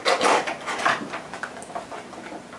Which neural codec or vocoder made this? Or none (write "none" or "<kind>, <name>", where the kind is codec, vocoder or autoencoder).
none